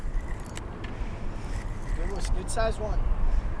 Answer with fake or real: real